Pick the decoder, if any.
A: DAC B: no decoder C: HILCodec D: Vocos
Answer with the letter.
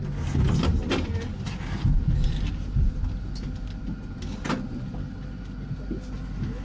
B